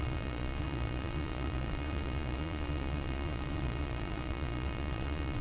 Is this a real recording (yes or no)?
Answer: no